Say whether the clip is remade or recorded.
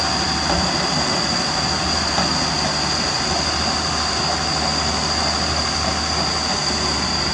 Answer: recorded